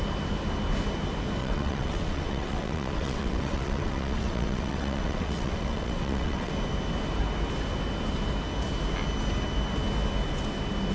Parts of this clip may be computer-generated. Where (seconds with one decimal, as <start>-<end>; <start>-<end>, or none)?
1.4-6.5